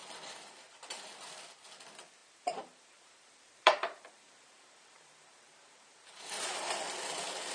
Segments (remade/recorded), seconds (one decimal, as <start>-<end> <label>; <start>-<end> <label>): 0.0-1.3 remade; 1.3-2.2 recorded; 2.2-6.7 remade; 6.7-7.5 recorded